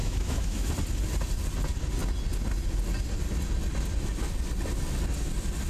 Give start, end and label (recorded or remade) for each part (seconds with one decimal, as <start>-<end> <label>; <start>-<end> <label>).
0.0-0.7 remade; 0.7-5.7 recorded